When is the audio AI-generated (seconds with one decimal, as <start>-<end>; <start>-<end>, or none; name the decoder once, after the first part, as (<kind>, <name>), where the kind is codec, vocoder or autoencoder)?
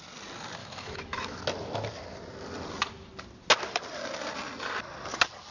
0.6-1.4 (autoencoder, DAC-VAE)